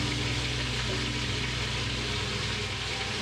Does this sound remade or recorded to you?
recorded